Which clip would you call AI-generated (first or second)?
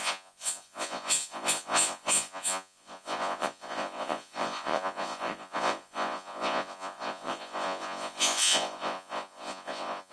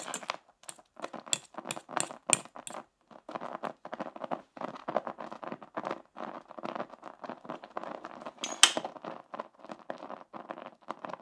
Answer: first